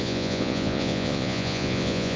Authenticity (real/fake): fake